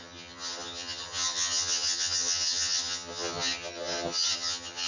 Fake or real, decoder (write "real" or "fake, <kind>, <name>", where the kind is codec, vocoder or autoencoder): fake, vocoder, HiFi-GAN